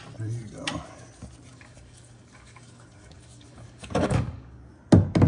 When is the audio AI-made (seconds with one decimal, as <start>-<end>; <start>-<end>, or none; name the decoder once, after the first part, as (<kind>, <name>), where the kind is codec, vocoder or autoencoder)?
1.5-4.7 (codec, DAC)

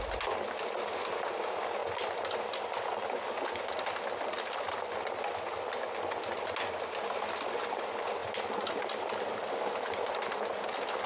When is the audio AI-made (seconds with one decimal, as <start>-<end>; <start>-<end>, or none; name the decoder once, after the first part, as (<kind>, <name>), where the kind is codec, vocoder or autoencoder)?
none

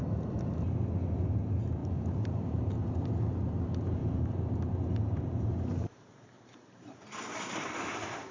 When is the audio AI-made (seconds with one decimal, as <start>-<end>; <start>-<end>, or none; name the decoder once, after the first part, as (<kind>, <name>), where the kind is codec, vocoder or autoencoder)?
1.8-2.7 (vocoder, BigVGAN v2); 4.0-7.3

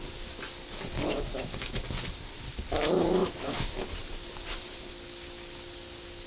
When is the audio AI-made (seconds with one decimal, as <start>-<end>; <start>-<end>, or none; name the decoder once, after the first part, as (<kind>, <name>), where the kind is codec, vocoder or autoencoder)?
3.2-4.9 (vocoder, BigVGAN v2)